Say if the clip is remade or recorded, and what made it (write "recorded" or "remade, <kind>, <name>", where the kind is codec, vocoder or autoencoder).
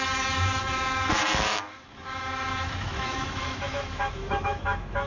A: remade, autoencoder, DAC-VAE